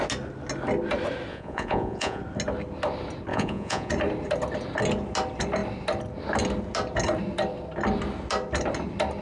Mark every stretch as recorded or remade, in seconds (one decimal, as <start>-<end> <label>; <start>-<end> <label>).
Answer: 0.0-1.3 recorded; 1.3-2.2 remade; 2.2-3.3 recorded; 3.3-3.9 remade; 3.9-9.2 recorded